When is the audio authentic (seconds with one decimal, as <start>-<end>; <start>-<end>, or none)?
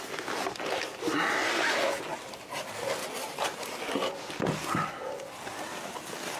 0.0-6.4